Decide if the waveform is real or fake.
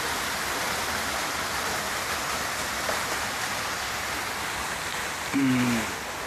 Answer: real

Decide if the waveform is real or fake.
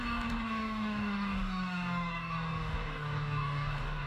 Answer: fake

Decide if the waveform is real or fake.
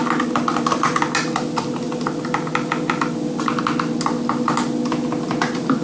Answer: real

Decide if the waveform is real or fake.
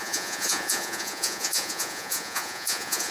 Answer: fake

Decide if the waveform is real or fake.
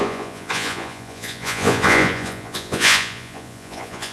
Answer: fake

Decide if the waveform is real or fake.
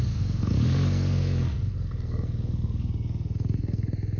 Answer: fake